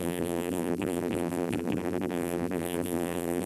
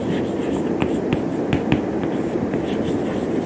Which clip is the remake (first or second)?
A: first